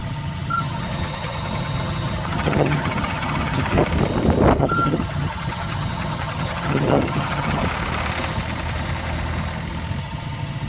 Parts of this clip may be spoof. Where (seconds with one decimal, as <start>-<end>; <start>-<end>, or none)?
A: 0.0-3.8; 4.6-7.6; 10.0-10.7

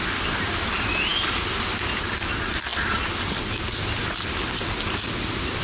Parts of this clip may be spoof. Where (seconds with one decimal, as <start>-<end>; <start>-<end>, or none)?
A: none

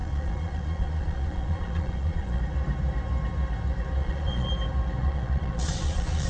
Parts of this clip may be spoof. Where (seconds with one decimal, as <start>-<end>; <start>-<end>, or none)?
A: 0.0-2.4; 4.0-4.5; 5.0-6.3

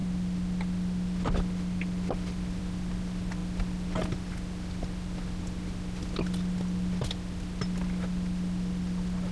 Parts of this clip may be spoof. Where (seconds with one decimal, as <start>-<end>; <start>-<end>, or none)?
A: none

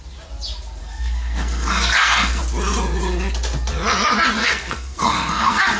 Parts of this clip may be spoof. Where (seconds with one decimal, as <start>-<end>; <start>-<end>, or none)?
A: 0.8-2.4; 4.4-5.8